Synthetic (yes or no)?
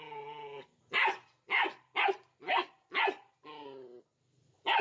no